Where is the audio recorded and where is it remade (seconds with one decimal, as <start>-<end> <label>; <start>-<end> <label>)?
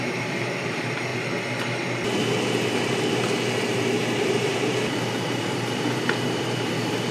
0.0-1.1 remade; 1.1-4.2 recorded; 4.2-7.1 remade